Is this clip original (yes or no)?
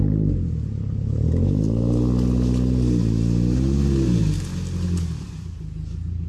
yes